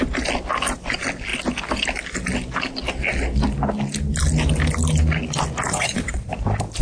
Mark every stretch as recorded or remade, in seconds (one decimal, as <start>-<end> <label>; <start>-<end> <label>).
0.0-5.7 recorded; 5.7-6.3 remade; 6.3-6.8 recorded